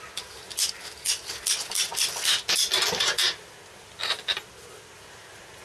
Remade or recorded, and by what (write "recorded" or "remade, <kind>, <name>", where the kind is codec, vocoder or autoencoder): recorded